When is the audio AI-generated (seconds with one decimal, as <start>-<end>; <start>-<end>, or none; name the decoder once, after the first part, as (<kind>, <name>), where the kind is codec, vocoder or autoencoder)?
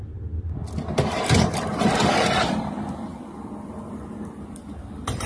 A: 0.0-0.6 (vocoder, BigVGAN v2); 1.5-3.1; 4.5-5.3